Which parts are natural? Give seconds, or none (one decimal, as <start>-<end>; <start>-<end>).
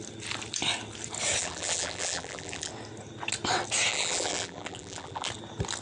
0.0-1.4; 2.7-3.9; 5.3-5.8